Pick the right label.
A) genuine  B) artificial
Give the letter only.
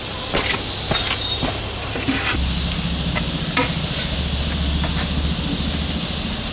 A